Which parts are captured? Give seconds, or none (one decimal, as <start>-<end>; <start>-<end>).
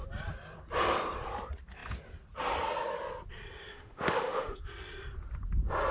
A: 0.0-3.7; 4.6-5.9